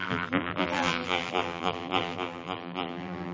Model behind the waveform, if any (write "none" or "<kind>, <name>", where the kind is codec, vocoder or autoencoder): vocoder, BigVGAN v2